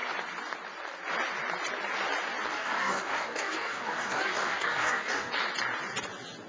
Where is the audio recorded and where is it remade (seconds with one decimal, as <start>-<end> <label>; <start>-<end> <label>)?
0.0-2.5 recorded; 2.5-5.3 remade; 5.3-6.5 recorded